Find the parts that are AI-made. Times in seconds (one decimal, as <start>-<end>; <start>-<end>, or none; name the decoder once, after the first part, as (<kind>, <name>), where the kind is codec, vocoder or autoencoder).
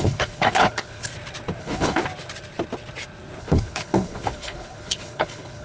0.0-1.1 (codec, HILCodec); 1.6-2.0; 3.4-5.6